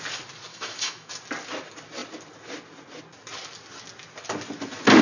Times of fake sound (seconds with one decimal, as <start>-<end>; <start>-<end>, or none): 0.5-1.1